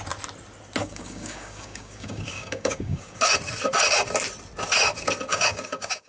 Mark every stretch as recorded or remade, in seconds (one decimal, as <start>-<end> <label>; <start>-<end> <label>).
0.0-0.8 recorded; 0.8-3.2 remade; 3.2-5.3 recorded; 5.3-6.1 remade